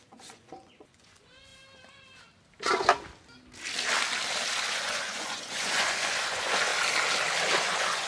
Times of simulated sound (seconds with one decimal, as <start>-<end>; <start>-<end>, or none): 0.0-1.5; 4.7-6.7; 7.6-8.1